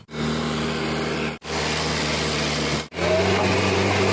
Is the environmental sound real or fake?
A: real